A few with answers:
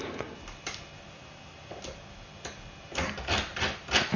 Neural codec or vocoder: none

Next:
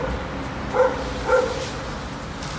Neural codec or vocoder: none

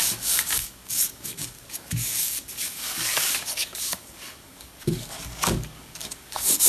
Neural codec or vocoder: codec, DAC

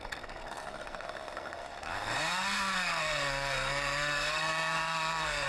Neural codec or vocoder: codec, SNAC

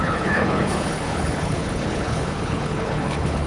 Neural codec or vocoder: codec, HILCodec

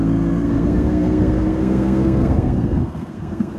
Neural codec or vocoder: codec, SNAC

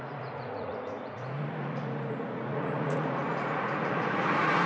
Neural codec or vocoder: vocoder, Vocos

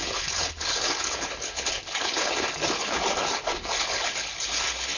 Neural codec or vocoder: codec, HILCodec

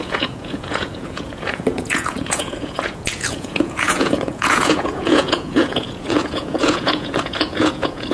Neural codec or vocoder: vocoder, Vocos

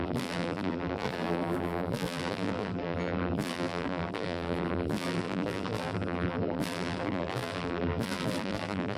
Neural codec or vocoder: vocoder, BigVGAN v2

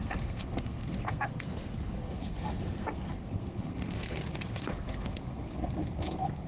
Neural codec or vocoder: codec, SNAC